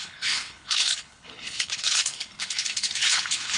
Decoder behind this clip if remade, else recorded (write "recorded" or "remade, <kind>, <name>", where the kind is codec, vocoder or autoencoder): remade, codec, HILCodec